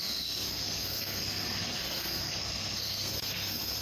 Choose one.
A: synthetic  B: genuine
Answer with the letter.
A